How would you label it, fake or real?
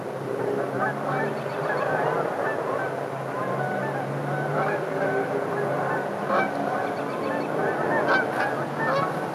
real